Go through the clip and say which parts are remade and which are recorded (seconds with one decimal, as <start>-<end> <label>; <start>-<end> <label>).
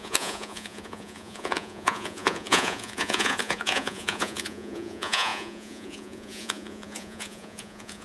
0.0-8.0 remade